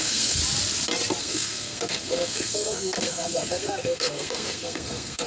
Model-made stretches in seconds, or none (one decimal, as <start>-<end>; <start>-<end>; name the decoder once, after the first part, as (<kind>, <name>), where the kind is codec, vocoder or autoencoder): 0.0-0.4 (codec, SNAC); 1.2-5.3